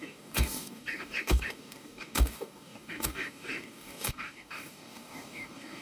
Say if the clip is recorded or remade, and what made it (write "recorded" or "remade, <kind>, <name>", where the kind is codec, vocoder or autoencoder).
remade, codec, DAC